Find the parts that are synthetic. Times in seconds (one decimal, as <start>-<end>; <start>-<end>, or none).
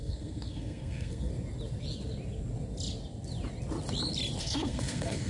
0.0-1.3; 4.4-5.3